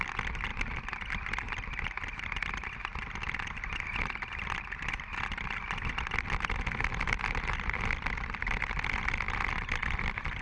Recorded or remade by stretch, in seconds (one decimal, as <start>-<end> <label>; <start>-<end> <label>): 0.0-10.4 recorded